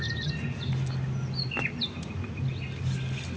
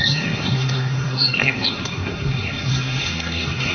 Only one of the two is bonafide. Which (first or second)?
first